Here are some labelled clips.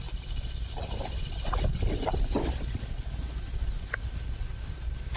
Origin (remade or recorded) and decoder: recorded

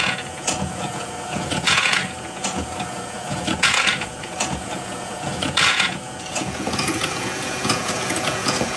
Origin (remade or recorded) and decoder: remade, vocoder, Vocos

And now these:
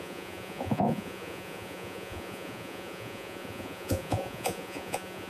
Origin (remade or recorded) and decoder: remade, vocoder, Vocos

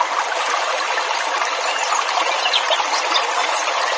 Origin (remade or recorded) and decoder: recorded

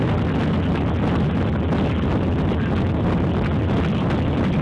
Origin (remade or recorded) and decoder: recorded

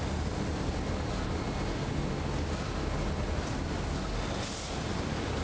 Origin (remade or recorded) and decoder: recorded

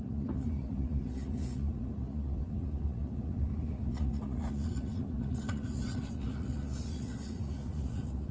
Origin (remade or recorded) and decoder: remade, vocoder, Vocos